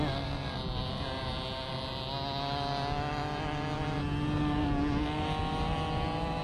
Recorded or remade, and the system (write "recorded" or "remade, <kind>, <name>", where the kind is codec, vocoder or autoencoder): recorded